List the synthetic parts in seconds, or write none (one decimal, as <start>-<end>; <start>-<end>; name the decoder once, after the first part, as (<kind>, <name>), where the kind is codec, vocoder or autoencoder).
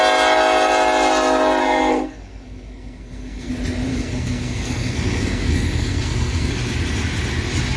1.6-3.5 (codec, SNAC); 3.9-6.5